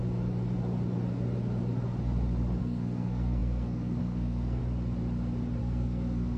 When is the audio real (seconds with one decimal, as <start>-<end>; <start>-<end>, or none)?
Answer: 0.0-2.6; 4.6-5.6